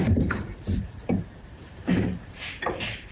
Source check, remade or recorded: remade